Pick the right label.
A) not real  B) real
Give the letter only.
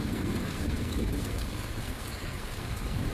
A